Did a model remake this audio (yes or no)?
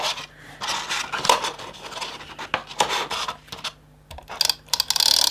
no